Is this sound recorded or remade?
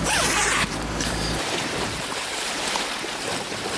remade